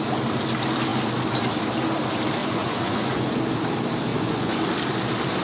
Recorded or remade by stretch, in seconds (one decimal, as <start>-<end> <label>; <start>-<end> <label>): 0.0-2.4 recorded; 2.4-3.4 remade; 3.4-4.1 recorded; 4.1-4.6 remade; 4.6-5.4 recorded